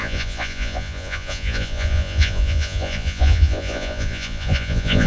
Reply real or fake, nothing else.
fake